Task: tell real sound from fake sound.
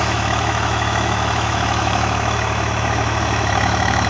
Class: fake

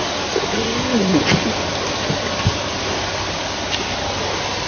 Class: real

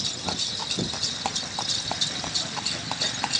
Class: real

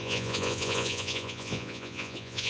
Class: fake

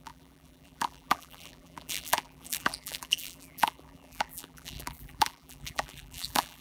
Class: fake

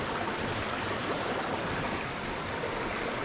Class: real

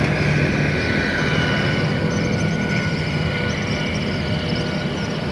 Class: real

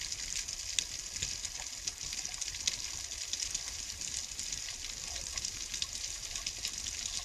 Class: real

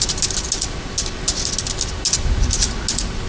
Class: real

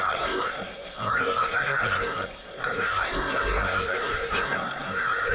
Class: fake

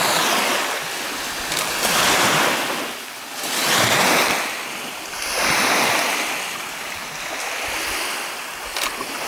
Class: real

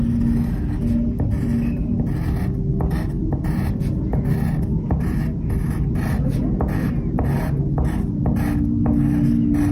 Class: real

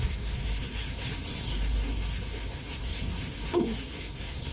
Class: fake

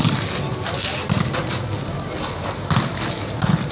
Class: real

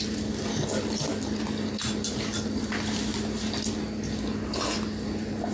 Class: real